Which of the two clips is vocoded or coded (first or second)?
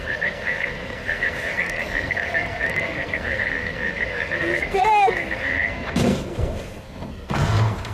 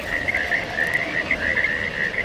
first